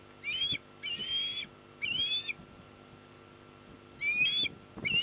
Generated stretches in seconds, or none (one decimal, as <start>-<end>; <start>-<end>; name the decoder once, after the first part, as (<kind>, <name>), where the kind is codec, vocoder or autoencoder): none